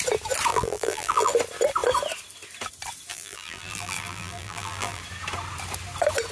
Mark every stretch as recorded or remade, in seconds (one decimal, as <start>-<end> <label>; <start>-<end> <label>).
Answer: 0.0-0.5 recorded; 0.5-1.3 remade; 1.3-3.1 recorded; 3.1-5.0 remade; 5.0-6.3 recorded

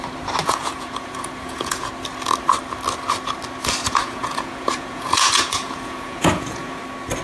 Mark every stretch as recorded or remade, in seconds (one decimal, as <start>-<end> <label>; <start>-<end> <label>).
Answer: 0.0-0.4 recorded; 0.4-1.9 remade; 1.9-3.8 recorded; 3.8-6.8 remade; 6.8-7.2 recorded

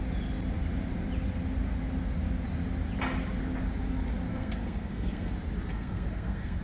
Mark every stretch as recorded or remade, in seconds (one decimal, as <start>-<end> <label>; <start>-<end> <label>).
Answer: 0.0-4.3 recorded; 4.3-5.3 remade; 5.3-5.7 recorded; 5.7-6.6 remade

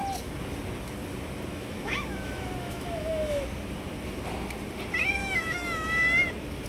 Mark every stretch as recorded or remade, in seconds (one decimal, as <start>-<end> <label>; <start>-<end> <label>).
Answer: 0.0-1.5 recorded; 1.5-3.4 remade; 3.4-5.2 recorded; 5.2-6.3 remade; 6.3-6.7 recorded

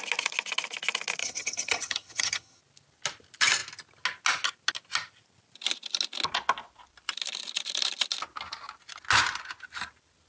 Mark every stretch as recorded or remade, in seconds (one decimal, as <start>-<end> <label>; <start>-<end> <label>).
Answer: 0.0-1.2 recorded; 1.2-2.6 remade; 2.6-10.3 recorded